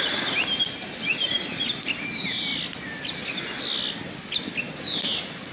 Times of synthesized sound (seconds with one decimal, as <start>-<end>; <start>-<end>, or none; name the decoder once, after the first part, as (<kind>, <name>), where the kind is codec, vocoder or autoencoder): 0.0-2.5 (vocoder, BigVGAN v2); 4.6-5.5